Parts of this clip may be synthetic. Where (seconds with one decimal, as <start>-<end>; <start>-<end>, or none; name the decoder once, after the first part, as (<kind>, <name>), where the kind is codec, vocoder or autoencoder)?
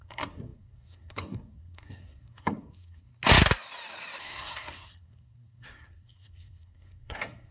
0.0-3.1 (codec, SNAC); 4.2-7.5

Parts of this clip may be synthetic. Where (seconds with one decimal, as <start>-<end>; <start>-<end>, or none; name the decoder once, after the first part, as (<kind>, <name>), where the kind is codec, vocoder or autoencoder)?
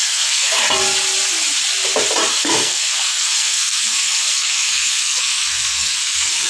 0.0-0.6 (codec, SNAC); 2.3-6.5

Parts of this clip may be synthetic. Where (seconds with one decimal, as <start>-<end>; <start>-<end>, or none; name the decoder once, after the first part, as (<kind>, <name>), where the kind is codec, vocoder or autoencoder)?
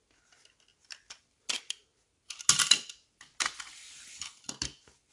none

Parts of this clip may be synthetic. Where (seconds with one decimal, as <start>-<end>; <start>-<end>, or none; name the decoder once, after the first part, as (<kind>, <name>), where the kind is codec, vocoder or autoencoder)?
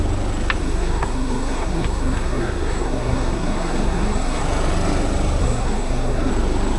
0.6-4.4 (codec, SNAC); 5.4-6.3